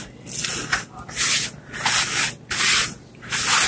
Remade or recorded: recorded